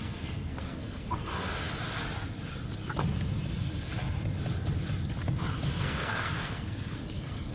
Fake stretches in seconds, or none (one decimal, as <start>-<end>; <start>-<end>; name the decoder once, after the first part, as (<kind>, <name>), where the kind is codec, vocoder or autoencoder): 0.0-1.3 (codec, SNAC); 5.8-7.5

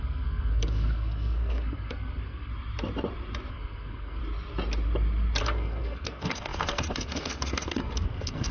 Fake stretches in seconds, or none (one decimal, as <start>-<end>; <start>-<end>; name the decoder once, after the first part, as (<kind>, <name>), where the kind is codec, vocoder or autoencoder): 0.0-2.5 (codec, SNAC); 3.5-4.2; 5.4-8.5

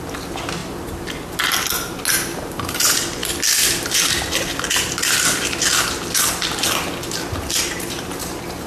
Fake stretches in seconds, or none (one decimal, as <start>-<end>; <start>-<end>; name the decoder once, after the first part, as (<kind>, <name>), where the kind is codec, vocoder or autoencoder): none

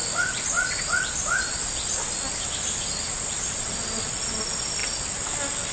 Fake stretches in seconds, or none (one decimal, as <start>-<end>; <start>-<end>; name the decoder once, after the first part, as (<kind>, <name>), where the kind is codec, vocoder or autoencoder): none

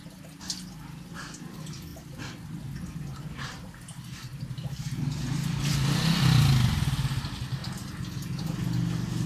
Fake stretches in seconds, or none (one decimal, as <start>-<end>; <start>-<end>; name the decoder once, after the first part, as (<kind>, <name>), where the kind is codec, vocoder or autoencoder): none

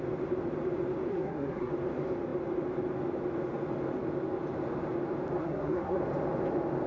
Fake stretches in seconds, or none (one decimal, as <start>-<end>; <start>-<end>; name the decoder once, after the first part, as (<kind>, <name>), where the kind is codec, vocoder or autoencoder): 1.1-1.7 (codec, SNAC); 5.4-6.0

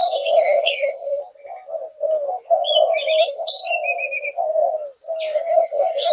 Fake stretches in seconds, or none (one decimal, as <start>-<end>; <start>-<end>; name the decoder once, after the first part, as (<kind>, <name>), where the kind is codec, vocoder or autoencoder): 0.0-1.2 (codec, SNAC); 3.2-3.7; 5.5-6.1